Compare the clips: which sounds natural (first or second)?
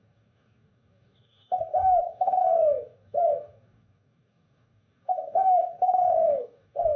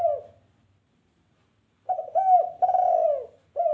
second